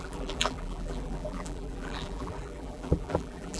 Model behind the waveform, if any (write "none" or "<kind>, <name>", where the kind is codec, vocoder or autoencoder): vocoder, BigVGAN v2